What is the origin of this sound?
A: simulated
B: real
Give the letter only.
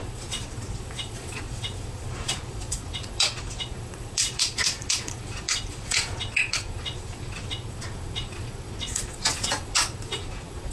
A